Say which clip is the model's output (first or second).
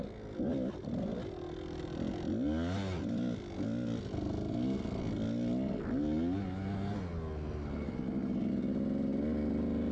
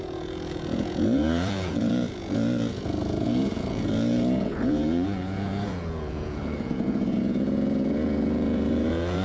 second